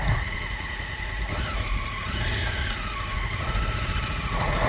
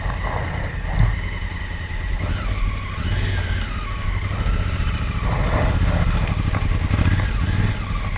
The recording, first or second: second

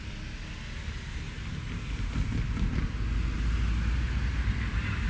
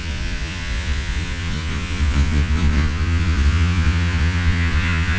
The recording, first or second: first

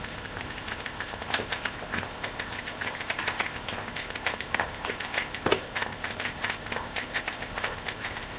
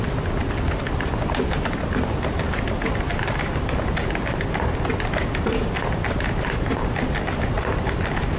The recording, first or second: second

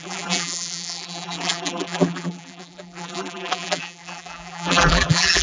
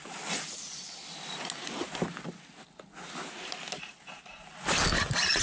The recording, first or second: second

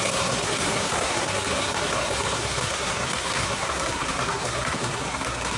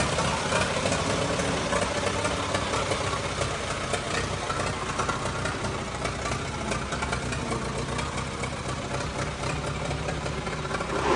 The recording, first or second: second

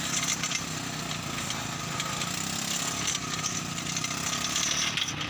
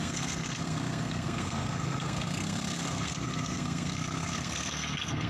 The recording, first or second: first